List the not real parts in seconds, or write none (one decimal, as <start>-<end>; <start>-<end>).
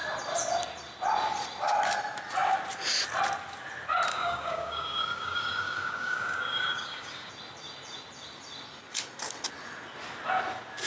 4.1-7.3